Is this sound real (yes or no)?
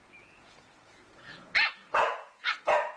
no